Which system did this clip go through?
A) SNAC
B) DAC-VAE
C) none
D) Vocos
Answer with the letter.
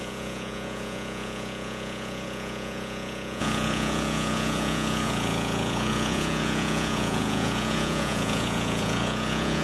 D